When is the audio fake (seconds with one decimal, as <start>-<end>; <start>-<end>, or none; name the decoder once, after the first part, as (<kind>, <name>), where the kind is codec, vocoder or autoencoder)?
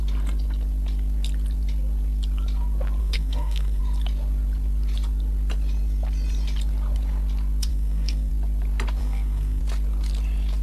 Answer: 3.0-3.8 (codec, SNAC); 7.7-8.3; 9.0-9.6